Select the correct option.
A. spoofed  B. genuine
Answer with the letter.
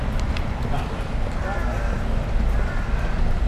B